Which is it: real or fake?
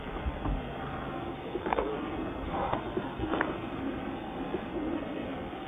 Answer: fake